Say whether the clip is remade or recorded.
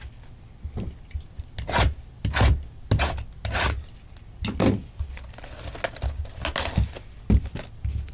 recorded